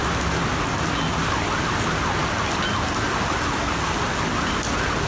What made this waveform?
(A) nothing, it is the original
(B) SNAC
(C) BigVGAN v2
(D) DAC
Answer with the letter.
A